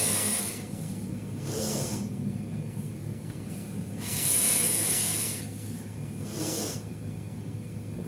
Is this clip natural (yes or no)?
no